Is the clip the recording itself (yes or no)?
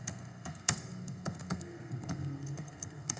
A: no